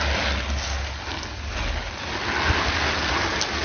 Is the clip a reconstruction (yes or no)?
no